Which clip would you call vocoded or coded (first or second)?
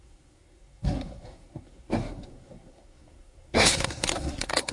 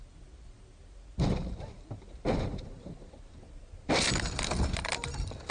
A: first